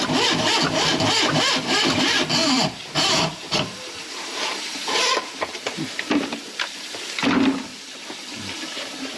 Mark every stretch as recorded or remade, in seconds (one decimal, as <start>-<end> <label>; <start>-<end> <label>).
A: 0.0-2.4 recorded; 2.4-6.6 remade; 6.6-7.7 recorded; 7.7-9.2 remade